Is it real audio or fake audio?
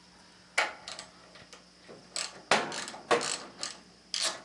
real